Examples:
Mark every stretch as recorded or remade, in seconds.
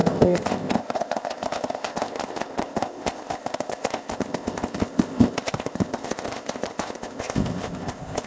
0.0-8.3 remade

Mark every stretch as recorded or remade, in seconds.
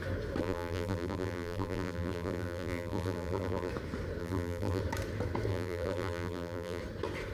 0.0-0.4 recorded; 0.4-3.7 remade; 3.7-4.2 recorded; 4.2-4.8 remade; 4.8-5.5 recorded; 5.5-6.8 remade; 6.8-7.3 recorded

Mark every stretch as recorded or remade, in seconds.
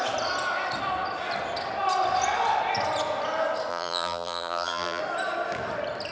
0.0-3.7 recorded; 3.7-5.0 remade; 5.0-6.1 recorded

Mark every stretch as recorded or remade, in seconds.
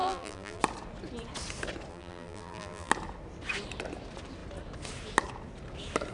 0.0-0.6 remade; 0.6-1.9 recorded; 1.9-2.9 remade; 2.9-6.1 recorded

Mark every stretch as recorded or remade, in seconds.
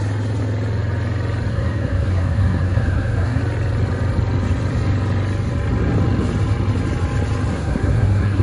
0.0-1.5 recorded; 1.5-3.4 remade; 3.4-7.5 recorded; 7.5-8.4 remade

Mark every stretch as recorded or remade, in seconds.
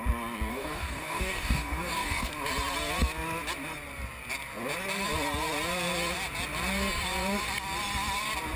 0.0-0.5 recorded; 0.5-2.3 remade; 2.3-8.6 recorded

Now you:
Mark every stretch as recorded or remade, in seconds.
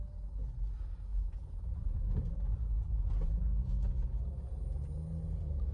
0.0-1.1 recorded; 1.1-4.5 remade; 4.5-5.7 recorded